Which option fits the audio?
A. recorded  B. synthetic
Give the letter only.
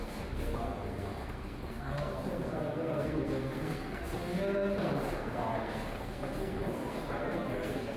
B